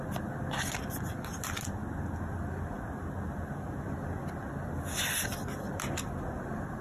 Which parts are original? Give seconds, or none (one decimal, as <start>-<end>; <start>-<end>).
0.0-6.8